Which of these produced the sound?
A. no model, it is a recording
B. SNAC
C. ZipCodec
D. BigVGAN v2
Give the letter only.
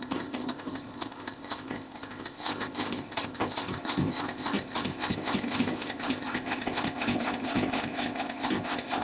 C